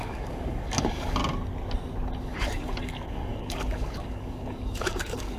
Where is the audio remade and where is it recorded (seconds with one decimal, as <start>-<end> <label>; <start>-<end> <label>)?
0.0-1.2 remade; 1.2-2.2 recorded; 2.2-5.4 remade